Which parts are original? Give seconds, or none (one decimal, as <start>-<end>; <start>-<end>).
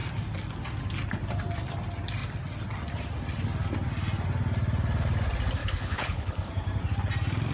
0.0-5.6; 6.5-7.5